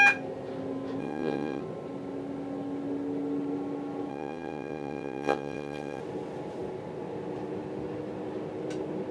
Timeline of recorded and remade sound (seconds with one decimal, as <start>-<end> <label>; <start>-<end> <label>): 0.0-1.0 recorded; 1.0-1.6 remade; 1.6-4.1 recorded; 4.1-6.0 remade; 6.0-9.1 recorded